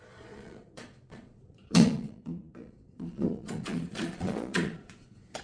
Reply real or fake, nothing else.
fake